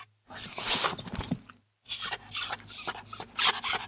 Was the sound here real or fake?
real